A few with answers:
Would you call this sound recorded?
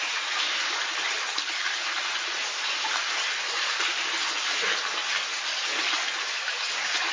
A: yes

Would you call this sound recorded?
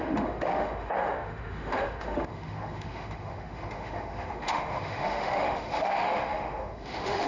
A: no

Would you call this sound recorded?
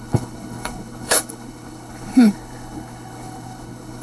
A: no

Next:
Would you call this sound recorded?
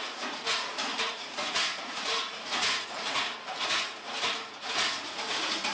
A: no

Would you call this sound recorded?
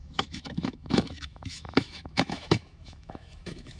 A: no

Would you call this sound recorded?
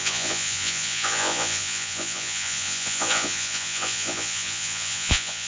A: no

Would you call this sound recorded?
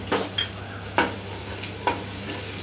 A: yes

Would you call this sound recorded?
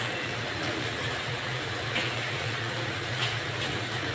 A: no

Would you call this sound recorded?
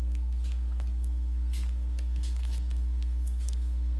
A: no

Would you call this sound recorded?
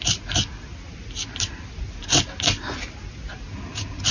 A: yes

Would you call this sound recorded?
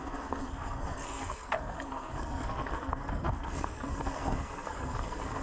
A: no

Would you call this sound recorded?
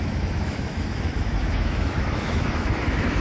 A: no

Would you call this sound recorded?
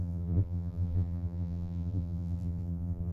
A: no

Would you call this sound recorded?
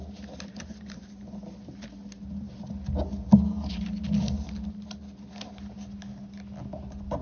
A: yes